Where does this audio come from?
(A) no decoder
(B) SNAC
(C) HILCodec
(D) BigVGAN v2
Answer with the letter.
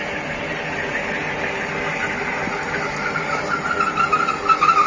A